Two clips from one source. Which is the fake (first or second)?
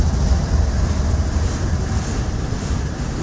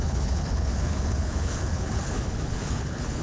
second